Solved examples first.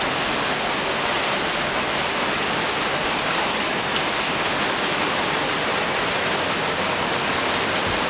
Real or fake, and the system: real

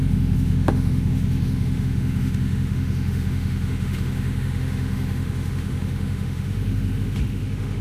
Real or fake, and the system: fake, autoencoder, DAC-VAE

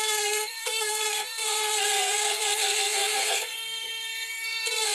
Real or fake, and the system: fake, codec, SNAC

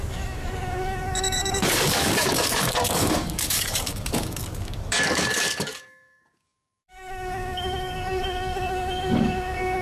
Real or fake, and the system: fake, codec, DAC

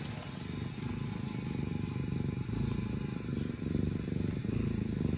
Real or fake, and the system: real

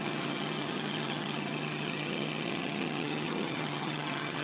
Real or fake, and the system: fake, vocoder, HiFi-GAN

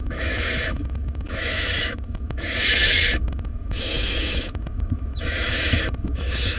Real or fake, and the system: fake, autoencoder, DAC-VAE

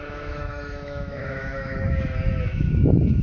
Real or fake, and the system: fake, autoencoder, DAC-VAE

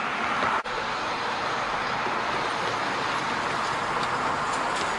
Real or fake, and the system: real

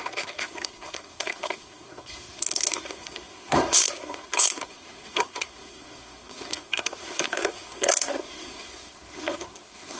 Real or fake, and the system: fake, codec, SNAC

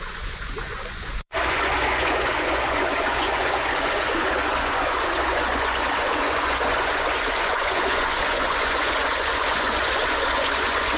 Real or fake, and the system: fake, vocoder, Vocos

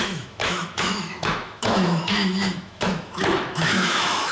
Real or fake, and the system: fake, autoencoder, DAC-VAE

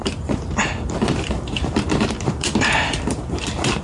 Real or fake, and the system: fake, vocoder, BigVGAN v2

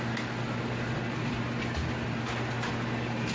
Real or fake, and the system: real